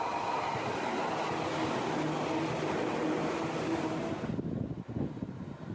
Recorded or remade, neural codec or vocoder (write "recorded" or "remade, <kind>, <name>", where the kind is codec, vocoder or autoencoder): recorded